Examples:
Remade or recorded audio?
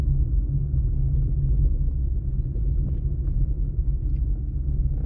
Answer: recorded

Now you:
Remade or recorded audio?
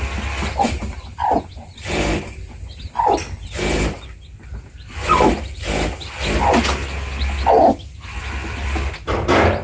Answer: recorded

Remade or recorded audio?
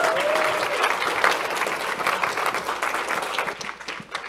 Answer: recorded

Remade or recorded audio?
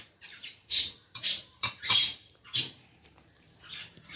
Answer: remade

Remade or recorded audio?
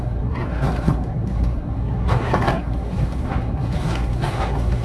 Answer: remade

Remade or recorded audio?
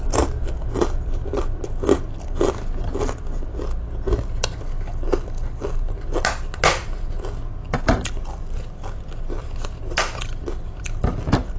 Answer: recorded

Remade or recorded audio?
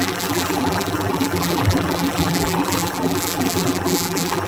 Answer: remade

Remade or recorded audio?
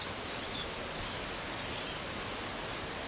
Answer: recorded